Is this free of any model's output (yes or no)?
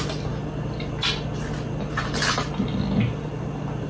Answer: yes